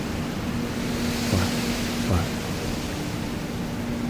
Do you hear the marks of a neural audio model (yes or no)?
no